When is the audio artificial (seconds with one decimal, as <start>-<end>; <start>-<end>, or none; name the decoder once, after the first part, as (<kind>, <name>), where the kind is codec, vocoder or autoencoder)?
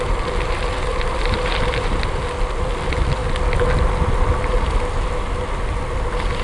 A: 0.9-2.7 (vocoder, BigVGAN v2)